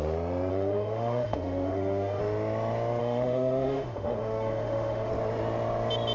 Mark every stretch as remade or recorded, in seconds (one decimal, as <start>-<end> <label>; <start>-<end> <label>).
0.0-0.5 recorded; 0.5-2.2 remade; 2.2-3.0 recorded; 3.0-5.1 remade; 5.1-6.1 recorded